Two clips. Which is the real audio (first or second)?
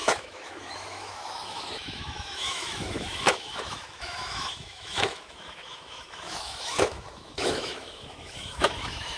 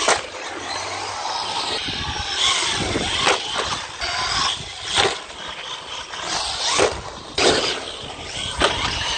second